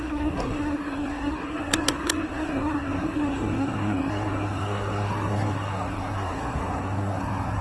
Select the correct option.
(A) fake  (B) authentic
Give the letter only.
A